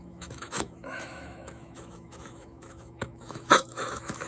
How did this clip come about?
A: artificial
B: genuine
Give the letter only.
A